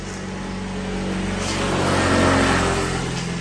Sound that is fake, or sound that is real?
real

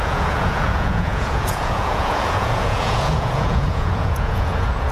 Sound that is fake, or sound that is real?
fake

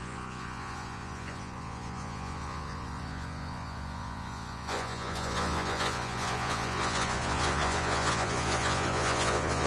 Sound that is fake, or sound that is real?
fake